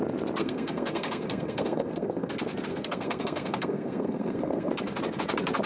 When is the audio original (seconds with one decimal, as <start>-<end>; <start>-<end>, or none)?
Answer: 0.0-0.4; 2.3-2.7; 4.7-5.7